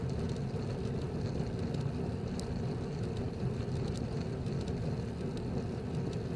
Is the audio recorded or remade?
recorded